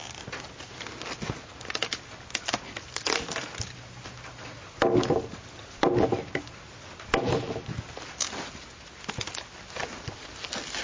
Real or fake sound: real